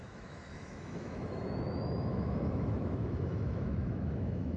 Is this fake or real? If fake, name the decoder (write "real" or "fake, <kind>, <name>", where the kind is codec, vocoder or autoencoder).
fake, autoencoder, DAC-VAE